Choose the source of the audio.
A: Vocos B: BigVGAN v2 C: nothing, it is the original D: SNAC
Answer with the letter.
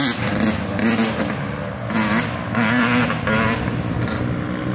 C